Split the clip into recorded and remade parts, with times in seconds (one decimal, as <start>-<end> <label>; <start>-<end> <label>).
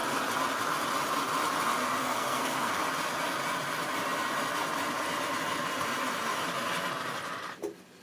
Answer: 0.0-2.0 recorded; 2.0-2.8 remade; 2.8-8.0 recorded